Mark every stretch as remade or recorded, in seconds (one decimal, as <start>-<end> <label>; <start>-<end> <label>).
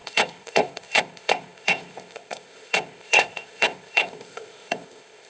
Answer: 0.0-5.3 remade